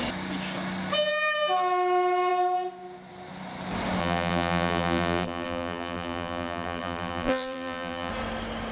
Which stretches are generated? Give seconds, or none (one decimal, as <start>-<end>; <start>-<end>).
4.0-8.1